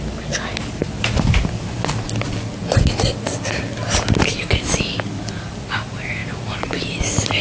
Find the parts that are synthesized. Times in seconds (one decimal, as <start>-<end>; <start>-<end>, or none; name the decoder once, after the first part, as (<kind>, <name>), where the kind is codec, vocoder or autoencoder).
none